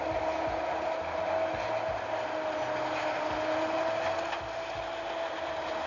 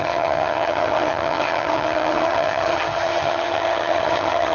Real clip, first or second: first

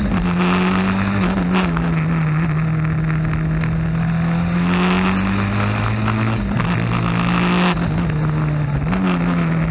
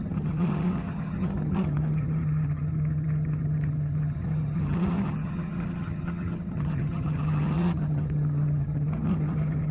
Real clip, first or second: first